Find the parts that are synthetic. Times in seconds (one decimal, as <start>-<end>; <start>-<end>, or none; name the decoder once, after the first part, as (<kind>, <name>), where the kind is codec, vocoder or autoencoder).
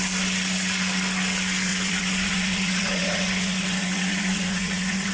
1.7-5.1 (vocoder, Vocos)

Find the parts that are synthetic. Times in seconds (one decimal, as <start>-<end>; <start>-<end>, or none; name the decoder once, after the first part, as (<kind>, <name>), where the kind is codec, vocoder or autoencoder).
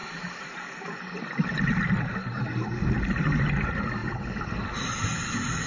none